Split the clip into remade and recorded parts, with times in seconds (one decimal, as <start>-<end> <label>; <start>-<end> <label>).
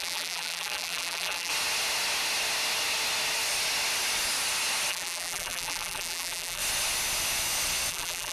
0.0-1.5 remade; 1.5-4.9 recorded; 4.9-6.6 remade; 6.6-7.9 recorded; 7.9-8.3 remade